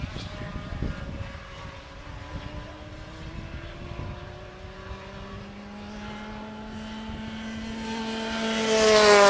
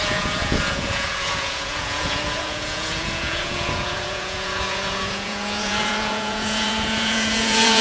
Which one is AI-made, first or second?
second